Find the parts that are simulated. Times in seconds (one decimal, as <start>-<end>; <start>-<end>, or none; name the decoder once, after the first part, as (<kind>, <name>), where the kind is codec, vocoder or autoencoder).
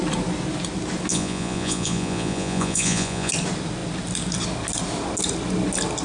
1.1-3.3 (vocoder, Vocos)